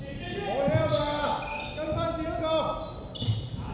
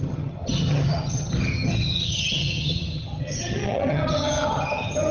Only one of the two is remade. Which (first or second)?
second